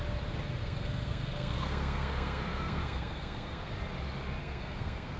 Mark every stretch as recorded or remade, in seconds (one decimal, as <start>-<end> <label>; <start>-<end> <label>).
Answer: 0.0-0.6 recorded; 0.6-3.7 remade; 3.7-4.4 recorded; 4.4-5.2 remade